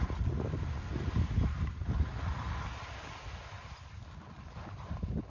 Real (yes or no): yes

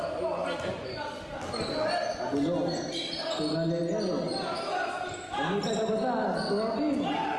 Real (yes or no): yes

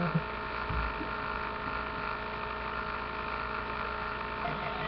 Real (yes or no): yes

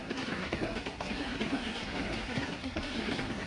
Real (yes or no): no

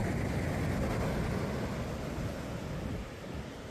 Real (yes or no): yes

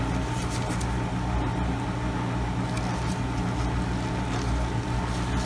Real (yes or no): yes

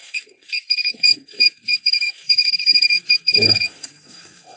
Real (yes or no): no